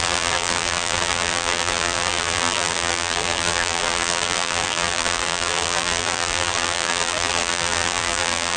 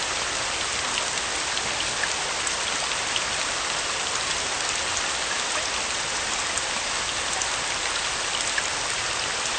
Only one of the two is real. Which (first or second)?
second